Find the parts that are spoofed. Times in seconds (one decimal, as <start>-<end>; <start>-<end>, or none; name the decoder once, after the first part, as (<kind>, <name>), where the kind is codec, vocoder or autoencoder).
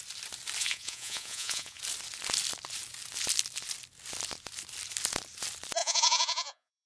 0.6-1.8 (vocoder, Vocos); 5.8-6.9